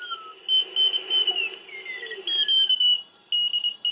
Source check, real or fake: real